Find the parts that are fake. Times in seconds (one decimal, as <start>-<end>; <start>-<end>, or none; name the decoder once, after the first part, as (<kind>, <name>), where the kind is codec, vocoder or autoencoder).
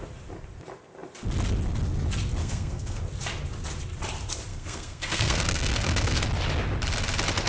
2.4-3.0 (codec, SNAC); 4.5-6.2